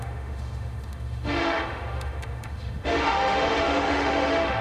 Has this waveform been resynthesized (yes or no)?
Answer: yes